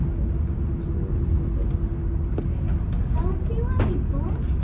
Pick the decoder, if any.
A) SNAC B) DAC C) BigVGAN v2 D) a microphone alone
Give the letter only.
D